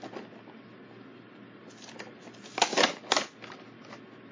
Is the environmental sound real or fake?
real